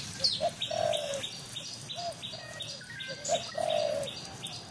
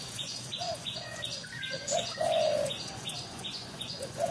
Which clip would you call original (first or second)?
first